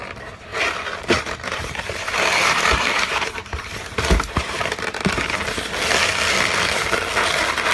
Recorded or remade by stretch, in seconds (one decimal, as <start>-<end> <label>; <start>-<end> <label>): 0.0-0.5 recorded; 0.5-5.0 remade; 5.0-7.7 recorded